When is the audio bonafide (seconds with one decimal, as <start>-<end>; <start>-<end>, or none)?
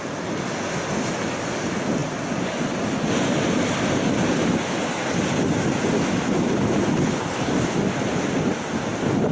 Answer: 0.0-6.9; 7.5-9.3